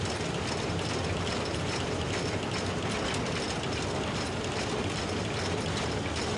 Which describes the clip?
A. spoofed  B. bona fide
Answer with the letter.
B